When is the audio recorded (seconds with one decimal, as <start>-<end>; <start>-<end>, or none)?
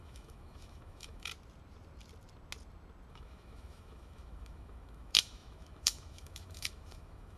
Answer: 1.3-3.1